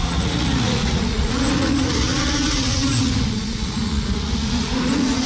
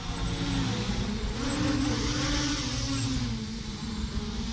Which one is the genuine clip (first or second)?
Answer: second